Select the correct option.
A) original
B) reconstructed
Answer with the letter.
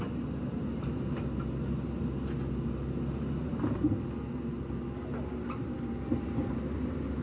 A